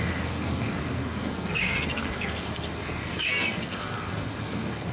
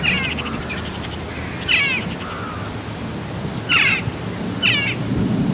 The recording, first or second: second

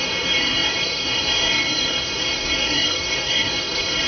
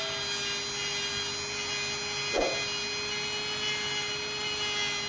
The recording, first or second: second